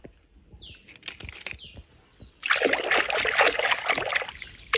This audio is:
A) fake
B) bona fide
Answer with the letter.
B